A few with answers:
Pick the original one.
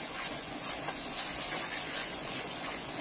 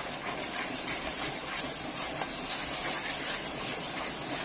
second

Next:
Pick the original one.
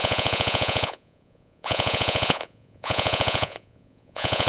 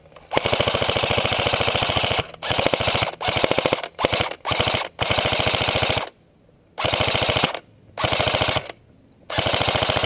second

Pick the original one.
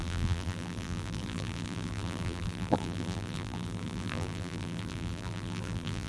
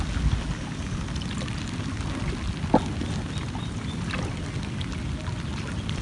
second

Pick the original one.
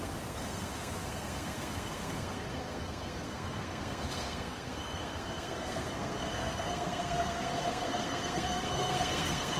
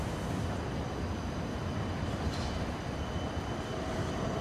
second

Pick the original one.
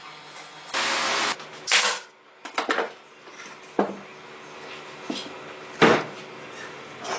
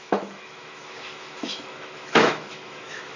first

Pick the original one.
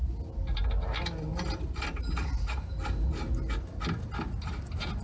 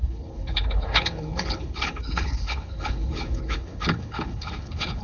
first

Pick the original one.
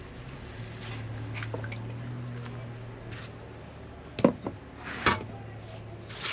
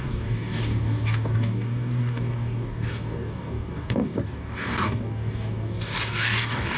first